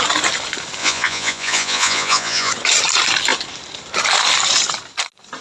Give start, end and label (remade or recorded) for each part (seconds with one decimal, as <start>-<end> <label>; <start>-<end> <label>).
0.0-0.8 recorded; 0.8-2.5 remade; 2.5-5.4 recorded